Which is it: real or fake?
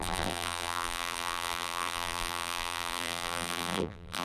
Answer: fake